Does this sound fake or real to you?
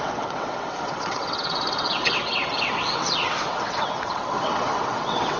fake